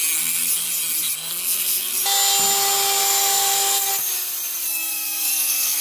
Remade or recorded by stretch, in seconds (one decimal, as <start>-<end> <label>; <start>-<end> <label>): 0.0-1.3 recorded; 1.3-1.9 remade; 1.9-3.0 recorded; 3.0-3.9 remade; 3.9-4.6 recorded; 4.6-5.8 remade